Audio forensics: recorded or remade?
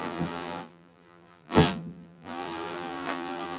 remade